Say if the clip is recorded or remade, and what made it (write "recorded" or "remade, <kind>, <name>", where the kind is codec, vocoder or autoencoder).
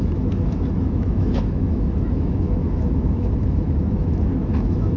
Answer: remade, autoencoder, DAC-VAE